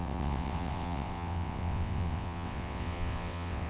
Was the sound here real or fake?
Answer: fake